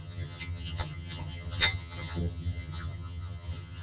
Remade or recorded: remade